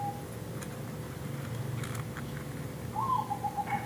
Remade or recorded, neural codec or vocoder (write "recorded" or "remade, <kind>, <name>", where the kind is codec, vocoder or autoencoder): recorded